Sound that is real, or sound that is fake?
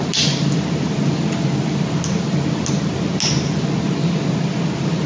real